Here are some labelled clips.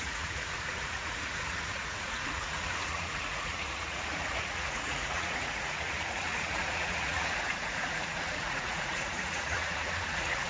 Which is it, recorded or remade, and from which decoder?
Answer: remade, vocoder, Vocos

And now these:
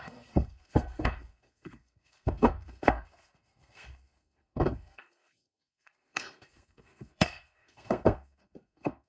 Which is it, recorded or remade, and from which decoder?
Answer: remade, codec, SNAC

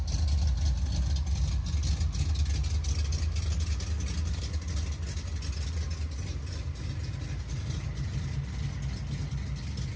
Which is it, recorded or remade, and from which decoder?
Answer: recorded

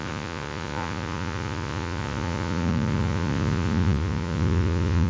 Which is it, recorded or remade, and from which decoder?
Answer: remade, vocoder, Vocos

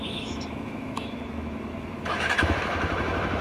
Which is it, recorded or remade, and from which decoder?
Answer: remade, autoencoder, DAC-VAE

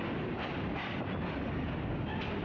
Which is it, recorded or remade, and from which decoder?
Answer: recorded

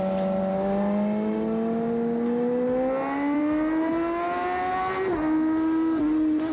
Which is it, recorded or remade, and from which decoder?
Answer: recorded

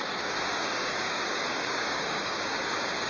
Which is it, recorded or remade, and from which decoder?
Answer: remade, codec, DAC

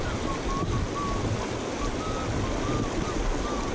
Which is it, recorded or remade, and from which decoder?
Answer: recorded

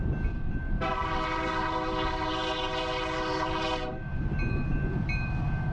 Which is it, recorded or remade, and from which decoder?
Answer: remade, vocoder, BigVGAN v2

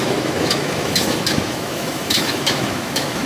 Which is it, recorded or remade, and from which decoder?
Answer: remade, autoencoder, DAC-VAE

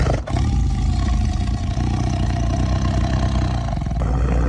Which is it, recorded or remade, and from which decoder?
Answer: recorded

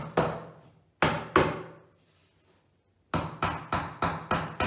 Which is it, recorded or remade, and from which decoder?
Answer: recorded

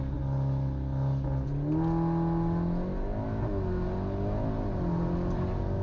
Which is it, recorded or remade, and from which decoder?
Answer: recorded